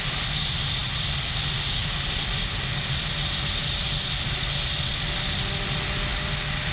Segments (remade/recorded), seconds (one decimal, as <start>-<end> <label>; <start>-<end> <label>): 0.0-6.7 recorded